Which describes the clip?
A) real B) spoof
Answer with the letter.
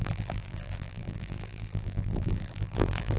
B